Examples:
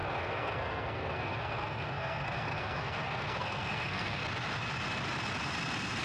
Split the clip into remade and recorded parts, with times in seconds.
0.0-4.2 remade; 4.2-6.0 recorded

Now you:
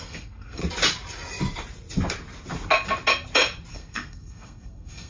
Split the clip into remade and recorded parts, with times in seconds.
0.0-0.6 remade; 0.6-3.7 recorded; 3.7-5.1 remade

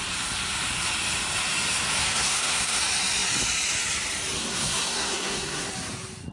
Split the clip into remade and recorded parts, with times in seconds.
0.0-2.0 recorded; 2.0-2.8 remade; 2.8-4.4 recorded; 4.4-5.7 remade; 5.7-6.3 recorded